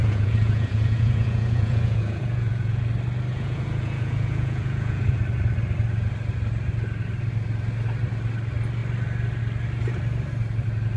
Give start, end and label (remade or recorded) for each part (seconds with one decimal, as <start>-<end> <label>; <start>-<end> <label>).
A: 0.0-2.8 remade; 2.8-3.3 recorded; 3.3-5.2 remade; 5.2-11.0 recorded